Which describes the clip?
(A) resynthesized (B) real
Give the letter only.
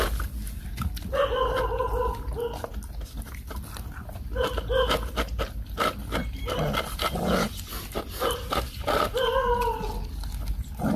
B